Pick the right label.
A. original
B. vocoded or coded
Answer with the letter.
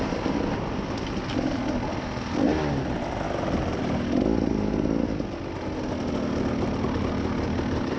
A